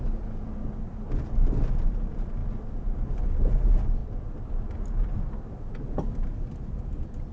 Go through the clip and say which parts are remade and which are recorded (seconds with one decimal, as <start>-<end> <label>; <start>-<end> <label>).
0.0-7.3 recorded